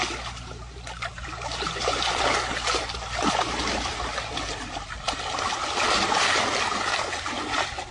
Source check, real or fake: real